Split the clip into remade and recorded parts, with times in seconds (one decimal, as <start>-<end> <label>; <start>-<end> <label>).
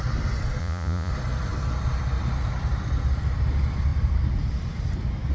0.0-0.6 recorded; 0.6-1.1 remade; 1.1-5.3 recorded